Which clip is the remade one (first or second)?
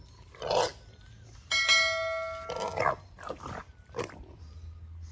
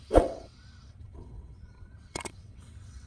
second